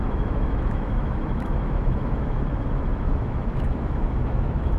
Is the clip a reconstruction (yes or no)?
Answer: yes